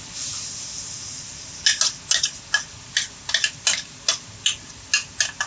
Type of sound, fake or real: real